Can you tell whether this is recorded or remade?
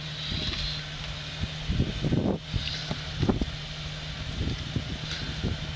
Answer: recorded